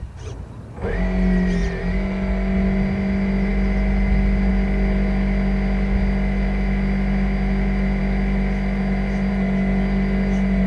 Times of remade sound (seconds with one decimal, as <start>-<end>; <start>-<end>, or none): none